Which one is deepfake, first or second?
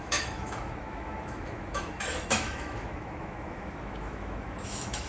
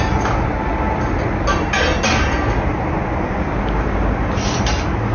first